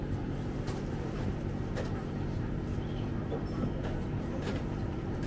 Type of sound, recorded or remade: remade